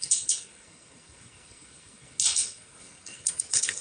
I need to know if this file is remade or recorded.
remade